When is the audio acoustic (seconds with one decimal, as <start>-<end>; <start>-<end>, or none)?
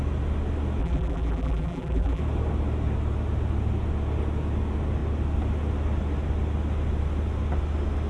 0.0-0.8; 2.2-8.1